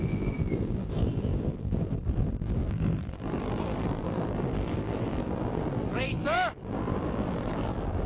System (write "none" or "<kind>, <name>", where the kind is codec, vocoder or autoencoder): vocoder, BigVGAN v2